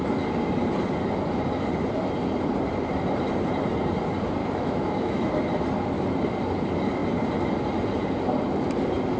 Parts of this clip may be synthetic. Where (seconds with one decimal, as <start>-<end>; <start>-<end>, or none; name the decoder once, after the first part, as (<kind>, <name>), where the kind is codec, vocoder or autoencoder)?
4.4-5.3 (autoencoder, DAC-VAE)